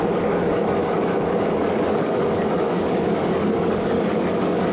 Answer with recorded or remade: remade